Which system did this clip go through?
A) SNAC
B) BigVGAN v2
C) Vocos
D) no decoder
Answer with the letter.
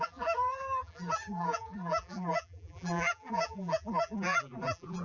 B